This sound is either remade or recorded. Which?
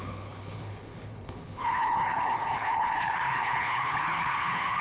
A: remade